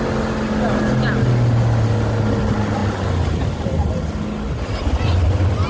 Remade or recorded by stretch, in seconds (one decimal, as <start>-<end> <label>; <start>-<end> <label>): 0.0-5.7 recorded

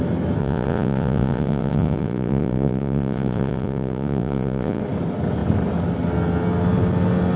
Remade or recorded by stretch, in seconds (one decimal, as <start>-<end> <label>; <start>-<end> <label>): 0.0-0.4 recorded; 0.4-4.8 remade; 4.8-7.4 recorded

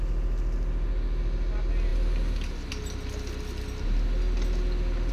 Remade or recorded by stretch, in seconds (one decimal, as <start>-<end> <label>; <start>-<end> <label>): 0.0-5.1 recorded

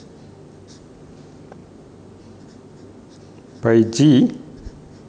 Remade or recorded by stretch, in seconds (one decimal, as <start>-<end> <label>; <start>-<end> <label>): 0.0-5.1 recorded

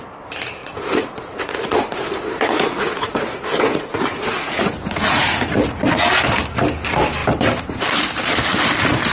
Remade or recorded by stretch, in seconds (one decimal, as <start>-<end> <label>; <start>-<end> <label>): 0.0-0.6 recorded; 0.6-5.8 remade; 5.8-9.1 recorded

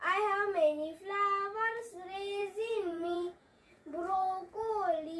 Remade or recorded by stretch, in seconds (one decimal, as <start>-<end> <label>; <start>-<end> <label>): 0.0-2.4 recorded; 2.4-4.7 remade; 4.7-5.2 recorded

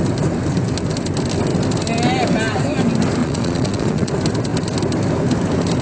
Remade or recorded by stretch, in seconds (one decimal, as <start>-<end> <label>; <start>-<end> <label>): 0.0-3.2 recorded; 3.2-4.1 remade; 4.1-5.8 recorded